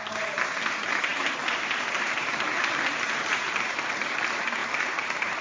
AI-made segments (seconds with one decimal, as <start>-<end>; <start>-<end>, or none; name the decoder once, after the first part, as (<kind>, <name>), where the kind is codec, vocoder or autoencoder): none

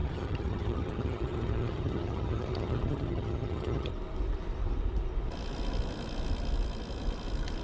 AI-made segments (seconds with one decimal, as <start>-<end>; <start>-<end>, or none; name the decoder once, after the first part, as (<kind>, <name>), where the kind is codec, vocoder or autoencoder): 0.0-3.9 (vocoder, HiFi-GAN)

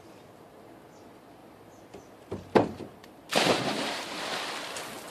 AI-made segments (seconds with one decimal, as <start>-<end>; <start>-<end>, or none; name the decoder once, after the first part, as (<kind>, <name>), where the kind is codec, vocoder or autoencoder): 1.4-4.5 (vocoder, BigVGAN v2)

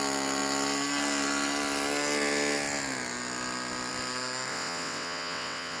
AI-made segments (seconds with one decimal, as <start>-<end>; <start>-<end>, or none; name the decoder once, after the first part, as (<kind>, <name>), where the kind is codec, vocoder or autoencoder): 4.5-5.8 (vocoder, WaveNeXt)